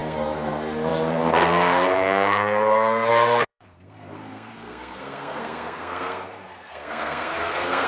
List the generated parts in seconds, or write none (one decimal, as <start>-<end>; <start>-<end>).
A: 0.0-7.9